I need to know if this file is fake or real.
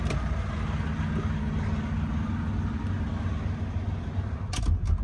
real